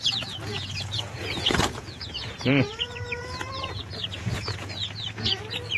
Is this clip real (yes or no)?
no